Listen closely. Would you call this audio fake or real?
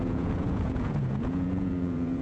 fake